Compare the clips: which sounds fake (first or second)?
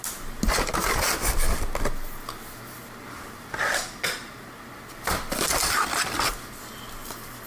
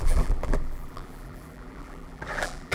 second